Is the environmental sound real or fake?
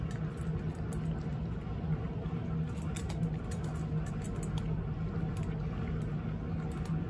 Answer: real